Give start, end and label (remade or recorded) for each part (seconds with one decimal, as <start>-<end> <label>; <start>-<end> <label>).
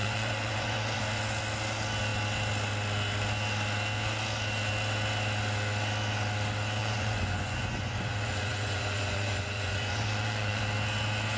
0.0-1.0 remade; 1.0-6.8 recorded; 6.8-10.6 remade; 10.6-11.4 recorded